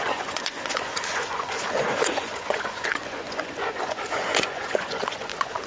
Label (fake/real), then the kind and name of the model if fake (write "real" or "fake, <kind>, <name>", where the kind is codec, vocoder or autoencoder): fake, vocoder, Vocos